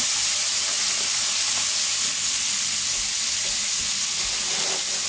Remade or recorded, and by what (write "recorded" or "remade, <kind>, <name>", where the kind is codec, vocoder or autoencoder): recorded